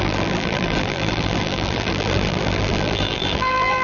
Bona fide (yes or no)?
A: no